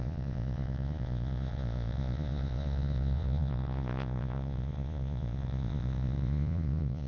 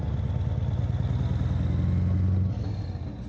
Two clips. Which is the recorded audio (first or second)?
second